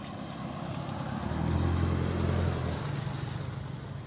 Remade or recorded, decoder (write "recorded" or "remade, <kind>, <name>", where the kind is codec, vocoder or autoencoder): recorded